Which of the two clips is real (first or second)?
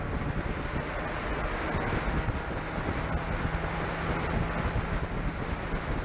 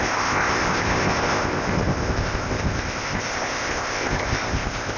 first